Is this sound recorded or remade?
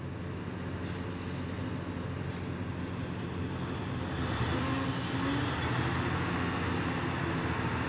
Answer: recorded